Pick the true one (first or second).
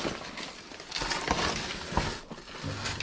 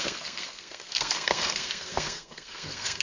first